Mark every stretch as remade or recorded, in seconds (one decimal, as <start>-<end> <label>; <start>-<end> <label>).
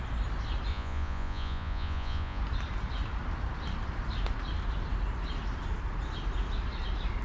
0.0-0.7 recorded; 0.7-2.4 remade; 2.4-7.2 recorded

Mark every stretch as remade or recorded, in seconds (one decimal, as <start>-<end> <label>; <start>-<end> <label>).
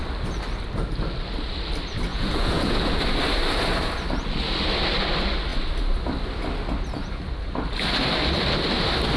0.0-2.1 recorded; 2.1-2.9 remade; 2.9-9.2 recorded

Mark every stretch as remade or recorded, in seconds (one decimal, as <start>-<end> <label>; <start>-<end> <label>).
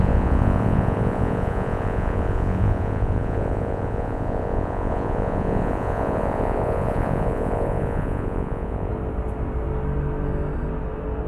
0.0-8.9 remade; 8.9-11.3 recorded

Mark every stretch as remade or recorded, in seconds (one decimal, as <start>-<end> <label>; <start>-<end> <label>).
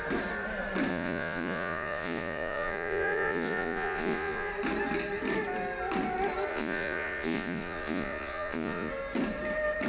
0.0-0.9 recorded; 0.9-4.5 remade; 4.5-6.5 recorded; 6.5-8.9 remade; 8.9-9.9 recorded